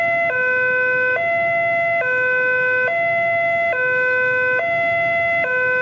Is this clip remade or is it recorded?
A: recorded